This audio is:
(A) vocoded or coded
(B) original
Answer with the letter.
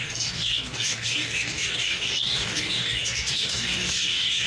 A